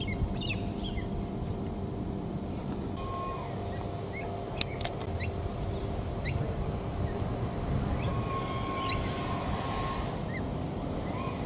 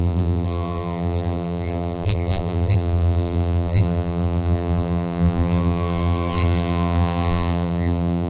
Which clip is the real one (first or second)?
first